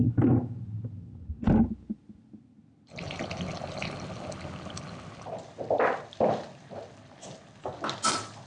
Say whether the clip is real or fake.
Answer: real